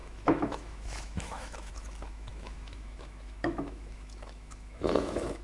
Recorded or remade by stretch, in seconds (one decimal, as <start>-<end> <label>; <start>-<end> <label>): 0.0-5.4 remade